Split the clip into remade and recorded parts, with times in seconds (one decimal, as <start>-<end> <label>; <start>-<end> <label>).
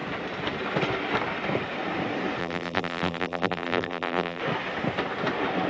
0.0-2.4 recorded; 2.4-4.4 remade; 4.4-5.7 recorded